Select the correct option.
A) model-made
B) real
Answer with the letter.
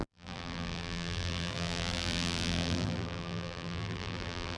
A